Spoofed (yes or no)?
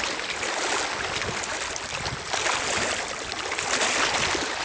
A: no